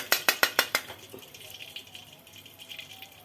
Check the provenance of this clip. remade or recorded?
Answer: remade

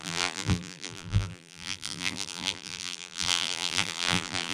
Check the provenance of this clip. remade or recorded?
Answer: remade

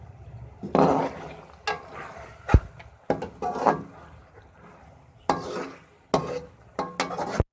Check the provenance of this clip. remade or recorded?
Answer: recorded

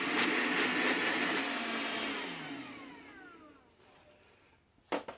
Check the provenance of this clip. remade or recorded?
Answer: recorded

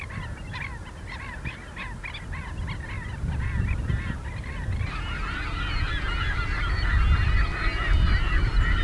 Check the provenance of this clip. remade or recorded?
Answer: recorded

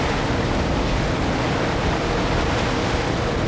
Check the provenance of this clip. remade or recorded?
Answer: recorded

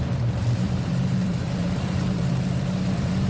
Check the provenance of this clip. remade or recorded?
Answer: remade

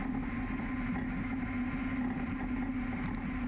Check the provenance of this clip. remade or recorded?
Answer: recorded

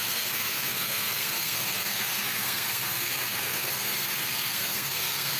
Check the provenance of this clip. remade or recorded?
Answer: remade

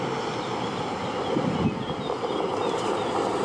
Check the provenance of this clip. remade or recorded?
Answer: recorded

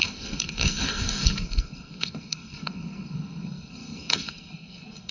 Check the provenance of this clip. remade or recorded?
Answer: remade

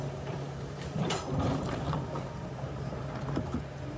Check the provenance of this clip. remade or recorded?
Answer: remade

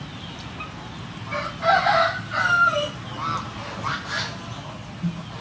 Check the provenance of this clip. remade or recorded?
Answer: recorded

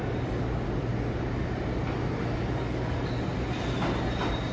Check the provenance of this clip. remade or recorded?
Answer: recorded